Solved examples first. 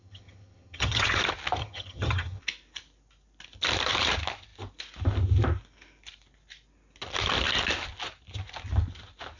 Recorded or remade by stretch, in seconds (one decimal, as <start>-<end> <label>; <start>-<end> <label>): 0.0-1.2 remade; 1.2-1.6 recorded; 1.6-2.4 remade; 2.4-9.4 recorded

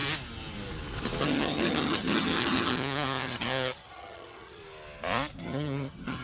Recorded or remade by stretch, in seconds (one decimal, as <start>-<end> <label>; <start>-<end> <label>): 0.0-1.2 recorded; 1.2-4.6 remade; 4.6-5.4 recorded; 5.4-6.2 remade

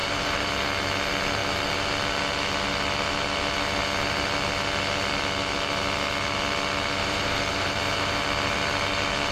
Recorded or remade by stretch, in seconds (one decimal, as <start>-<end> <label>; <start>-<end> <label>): 0.0-0.5 remade; 0.5-7.0 recorded; 7.0-8.2 remade; 8.2-9.3 recorded

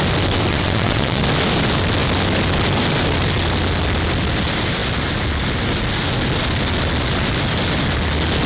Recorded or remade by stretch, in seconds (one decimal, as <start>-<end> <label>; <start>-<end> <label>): 0.0-0.5 recorded; 0.5-1.2 remade; 1.2-8.5 recorded

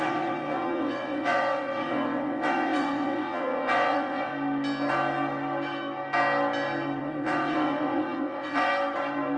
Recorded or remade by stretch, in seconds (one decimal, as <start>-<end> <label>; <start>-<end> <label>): 0.0-4.3 remade; 4.3-7.0 recorded; 7.0-8.7 remade; 8.7-9.4 recorded

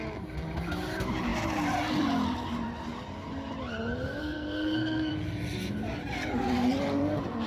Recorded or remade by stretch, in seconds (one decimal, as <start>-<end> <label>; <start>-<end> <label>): 0.0-4.2 recorded; 4.2-5.1 remade; 5.1-7.5 recorded

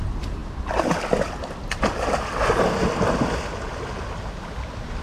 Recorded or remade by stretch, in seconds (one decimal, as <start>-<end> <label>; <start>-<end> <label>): 0.0-5.0 recorded